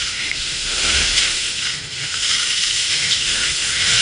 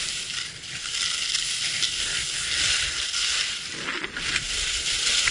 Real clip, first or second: second